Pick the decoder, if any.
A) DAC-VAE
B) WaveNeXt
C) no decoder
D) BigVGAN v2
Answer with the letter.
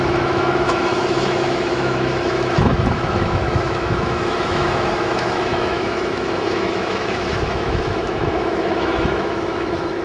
A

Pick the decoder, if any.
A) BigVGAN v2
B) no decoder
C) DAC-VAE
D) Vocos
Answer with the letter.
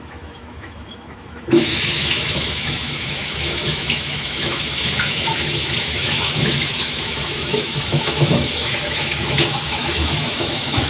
C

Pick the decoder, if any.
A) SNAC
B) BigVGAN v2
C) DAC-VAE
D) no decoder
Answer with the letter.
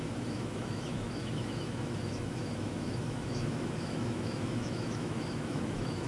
C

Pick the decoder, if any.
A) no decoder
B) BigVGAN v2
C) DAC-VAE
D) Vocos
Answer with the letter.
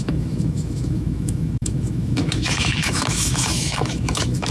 C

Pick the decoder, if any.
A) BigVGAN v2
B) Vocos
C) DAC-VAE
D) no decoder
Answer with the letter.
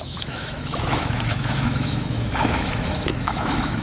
C